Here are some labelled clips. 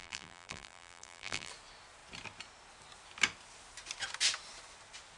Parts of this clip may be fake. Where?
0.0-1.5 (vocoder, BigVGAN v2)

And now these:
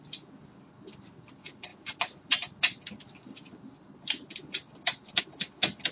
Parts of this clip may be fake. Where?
none

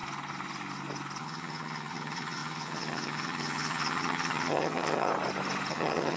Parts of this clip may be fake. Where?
1.2-5.1 (vocoder, HiFi-GAN); 5.7-6.2

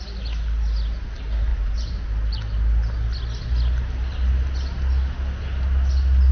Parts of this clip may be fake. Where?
1.5-2.0 (vocoder, BigVGAN v2)

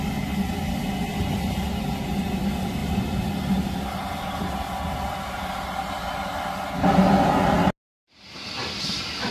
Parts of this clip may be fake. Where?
none

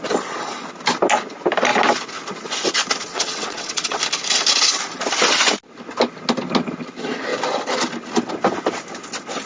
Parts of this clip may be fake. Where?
3.1-4.0 (vocoder, WaveNeXt)